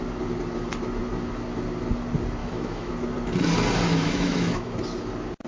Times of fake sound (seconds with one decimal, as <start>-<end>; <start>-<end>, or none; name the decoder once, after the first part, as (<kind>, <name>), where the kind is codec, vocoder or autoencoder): 2.4-2.9 (autoencoder, DAC-VAE); 3.9-4.7